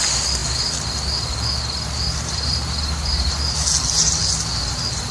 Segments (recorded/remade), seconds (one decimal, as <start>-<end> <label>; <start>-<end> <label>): 0.0-5.1 recorded